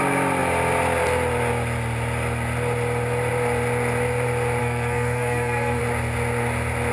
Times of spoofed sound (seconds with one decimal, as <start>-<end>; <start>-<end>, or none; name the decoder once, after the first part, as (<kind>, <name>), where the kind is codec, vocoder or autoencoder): 4.6-5.8 (codec, SNAC)

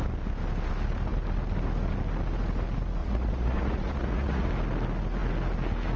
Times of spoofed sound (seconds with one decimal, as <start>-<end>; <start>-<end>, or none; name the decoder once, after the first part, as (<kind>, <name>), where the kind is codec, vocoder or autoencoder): 3.0-4.5 (vocoder, Vocos)